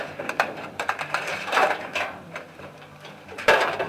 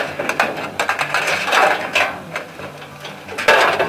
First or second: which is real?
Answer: second